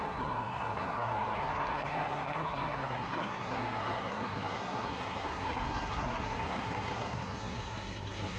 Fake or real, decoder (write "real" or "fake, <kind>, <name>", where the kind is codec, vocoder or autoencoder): fake, codec, SNAC